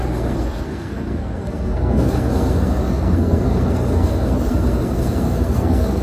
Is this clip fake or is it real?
fake